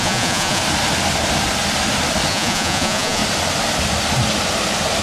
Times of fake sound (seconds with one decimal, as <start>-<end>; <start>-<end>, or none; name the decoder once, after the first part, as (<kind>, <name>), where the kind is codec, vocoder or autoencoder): 0.0-0.6 (vocoder, Vocos); 2.3-3.2